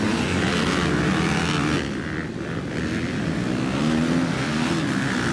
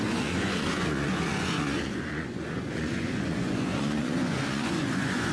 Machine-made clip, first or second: second